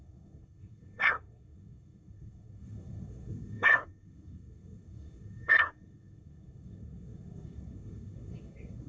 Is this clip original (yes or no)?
no